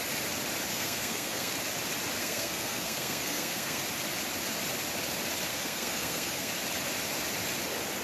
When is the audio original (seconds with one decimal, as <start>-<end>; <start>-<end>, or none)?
0.0-0.7; 1.5-2.2; 3.8-5.5; 6.5-8.0